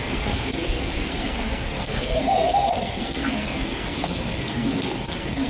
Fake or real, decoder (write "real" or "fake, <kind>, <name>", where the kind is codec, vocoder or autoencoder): fake, codec, SNAC